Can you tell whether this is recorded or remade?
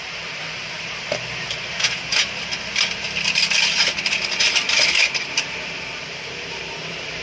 remade